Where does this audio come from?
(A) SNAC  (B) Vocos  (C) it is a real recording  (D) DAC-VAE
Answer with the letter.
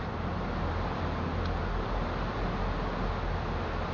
C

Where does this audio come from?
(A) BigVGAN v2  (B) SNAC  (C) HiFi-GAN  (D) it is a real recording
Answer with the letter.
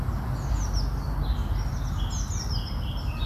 D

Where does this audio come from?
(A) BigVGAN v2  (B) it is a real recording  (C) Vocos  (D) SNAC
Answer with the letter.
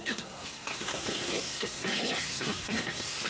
D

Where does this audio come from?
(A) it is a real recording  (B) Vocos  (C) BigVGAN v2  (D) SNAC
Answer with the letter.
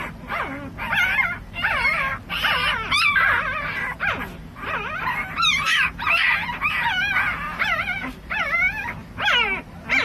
A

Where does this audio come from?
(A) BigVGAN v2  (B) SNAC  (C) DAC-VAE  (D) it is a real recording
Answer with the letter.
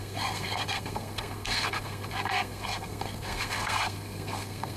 B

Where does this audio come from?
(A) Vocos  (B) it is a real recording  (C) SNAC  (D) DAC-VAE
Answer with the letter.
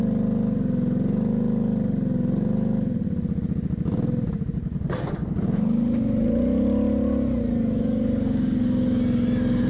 B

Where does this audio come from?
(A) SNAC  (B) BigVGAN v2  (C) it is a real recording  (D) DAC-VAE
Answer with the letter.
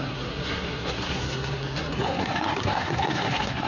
A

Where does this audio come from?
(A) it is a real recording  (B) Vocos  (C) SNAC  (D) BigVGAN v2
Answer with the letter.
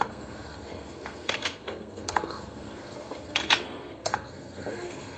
C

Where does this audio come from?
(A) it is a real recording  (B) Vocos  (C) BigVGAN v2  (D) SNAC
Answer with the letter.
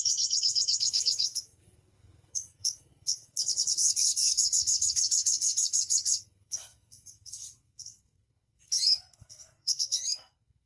D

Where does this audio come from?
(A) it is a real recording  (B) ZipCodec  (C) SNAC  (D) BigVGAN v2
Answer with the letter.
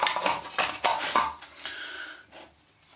A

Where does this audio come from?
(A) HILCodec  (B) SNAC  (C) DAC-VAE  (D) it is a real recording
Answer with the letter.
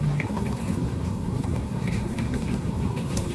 B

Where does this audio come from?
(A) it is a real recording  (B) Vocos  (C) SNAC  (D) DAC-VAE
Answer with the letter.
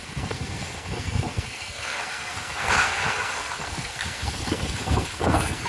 C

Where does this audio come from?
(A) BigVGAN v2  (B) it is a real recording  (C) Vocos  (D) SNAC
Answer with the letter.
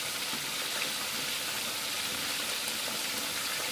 B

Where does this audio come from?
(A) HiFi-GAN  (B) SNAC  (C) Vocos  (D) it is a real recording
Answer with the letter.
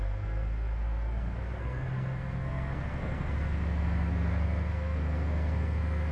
B